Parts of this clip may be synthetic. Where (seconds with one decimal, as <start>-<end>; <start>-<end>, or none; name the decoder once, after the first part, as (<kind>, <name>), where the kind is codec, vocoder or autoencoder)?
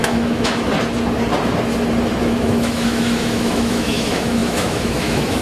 0.0-0.7 (autoencoder, DAC-VAE); 2.2-5.4